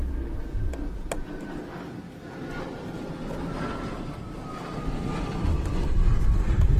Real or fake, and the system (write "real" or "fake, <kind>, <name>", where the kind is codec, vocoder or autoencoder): real